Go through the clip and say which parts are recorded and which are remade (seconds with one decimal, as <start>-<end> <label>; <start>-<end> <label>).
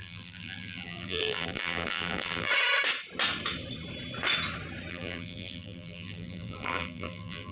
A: 0.0-2.5 remade; 2.5-4.9 recorded; 4.9-7.5 remade